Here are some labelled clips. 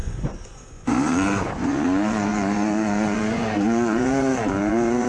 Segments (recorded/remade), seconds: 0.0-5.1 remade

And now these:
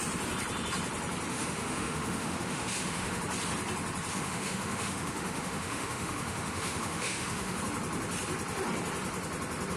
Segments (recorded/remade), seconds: 0.0-1.3 recorded; 1.3-3.2 remade; 3.2-4.1 recorded; 4.1-7.6 remade; 7.6-9.8 recorded

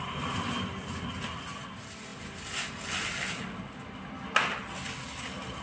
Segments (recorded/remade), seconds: 0.0-5.6 recorded

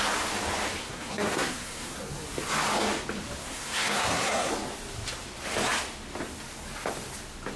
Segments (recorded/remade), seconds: 0.0-0.8 recorded; 0.8-2.0 remade; 2.0-3.4 recorded; 3.4-4.5 remade; 4.5-7.6 recorded

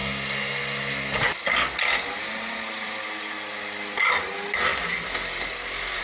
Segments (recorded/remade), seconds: 0.0-4.7 recorded; 4.7-6.0 remade

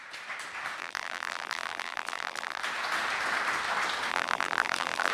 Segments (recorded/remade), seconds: 0.0-0.8 recorded; 0.8-2.6 remade; 2.6-4.1 recorded; 4.1-5.1 remade

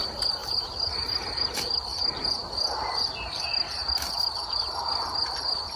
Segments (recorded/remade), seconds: 0.0-1.9 remade; 1.9-2.5 recorded; 2.5-3.5 remade; 3.5-4.3 recorded; 4.3-5.8 remade

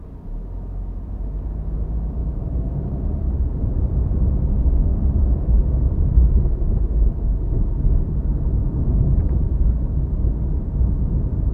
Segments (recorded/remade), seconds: 0.0-2.2 recorded; 2.2-4.3 remade; 4.3-4.9 recorded; 4.9-6.5 remade; 6.5-11.5 recorded